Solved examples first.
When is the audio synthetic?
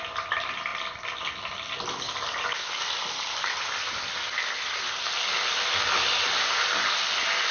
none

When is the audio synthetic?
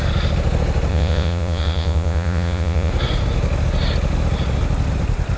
0.9-2.9 (vocoder, Vocos)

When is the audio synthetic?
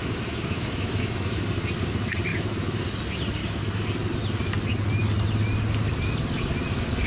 0.0-1.4 (autoencoder, DAC-VAE); 2.3-2.8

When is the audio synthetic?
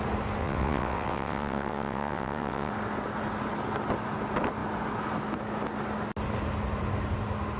0.4-2.7 (vocoder, WaveNeXt)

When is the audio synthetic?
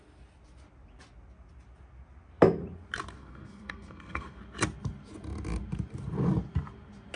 3.2-4.4 (codec, SNAC)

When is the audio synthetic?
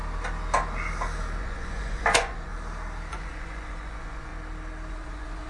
1.4-2.5 (vocoder, Vocos); 3.1-4.3; 4.9-5.5